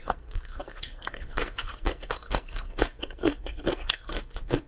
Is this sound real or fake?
fake